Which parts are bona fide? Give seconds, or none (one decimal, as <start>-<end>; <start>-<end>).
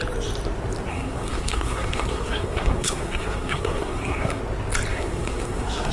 0.0-0.9; 4.4-4.9